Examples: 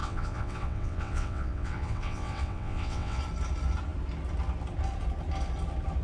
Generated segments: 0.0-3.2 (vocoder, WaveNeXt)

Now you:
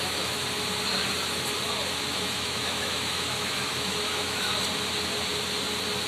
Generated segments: 0.0-0.4 (autoencoder, DAC-VAE); 2.1-4.5

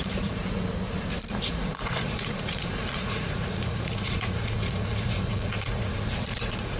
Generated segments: 0.0-0.4 (vocoder, Vocos); 1.3-6.8

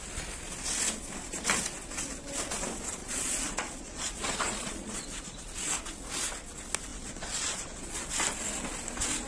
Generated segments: 3.0-5.4 (vocoder, Vocos); 6.9-8.1

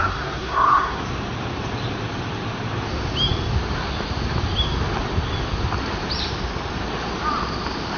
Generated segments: 0.0-1.0 (codec, SNAC)